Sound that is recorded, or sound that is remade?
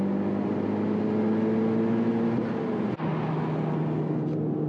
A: recorded